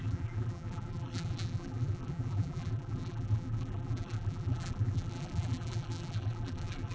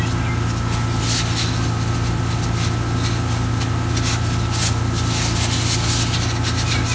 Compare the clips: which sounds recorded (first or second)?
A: second